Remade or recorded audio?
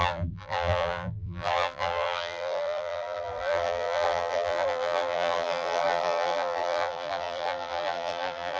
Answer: remade